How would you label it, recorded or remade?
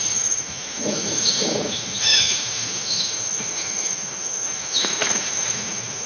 remade